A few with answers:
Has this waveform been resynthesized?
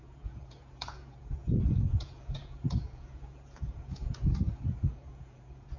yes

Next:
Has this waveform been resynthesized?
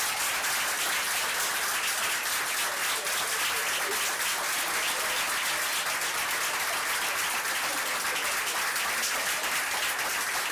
no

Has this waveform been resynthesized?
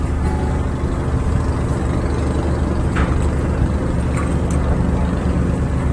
no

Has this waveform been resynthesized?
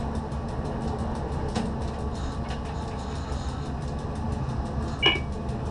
no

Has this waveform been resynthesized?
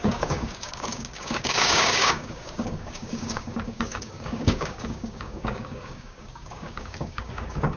yes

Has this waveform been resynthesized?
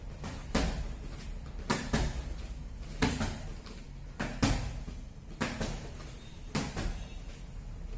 no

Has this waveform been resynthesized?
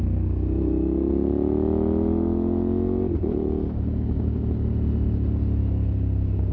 no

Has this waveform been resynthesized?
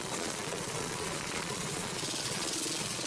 yes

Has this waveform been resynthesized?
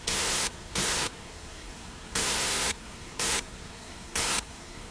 yes